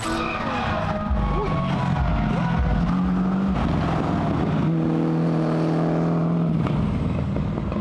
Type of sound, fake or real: real